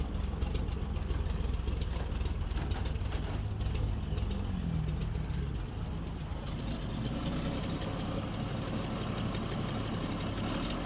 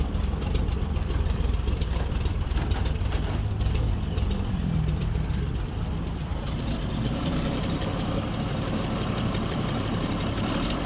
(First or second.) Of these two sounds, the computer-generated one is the second